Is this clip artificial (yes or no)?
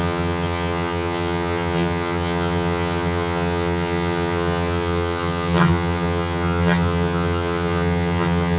yes